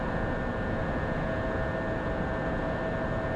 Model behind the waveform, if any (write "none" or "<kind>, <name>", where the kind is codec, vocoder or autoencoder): none